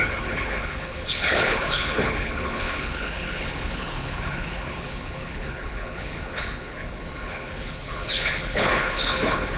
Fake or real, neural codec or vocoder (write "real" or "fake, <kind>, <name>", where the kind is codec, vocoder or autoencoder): fake, codec, HILCodec